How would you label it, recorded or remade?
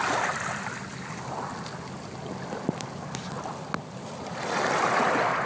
recorded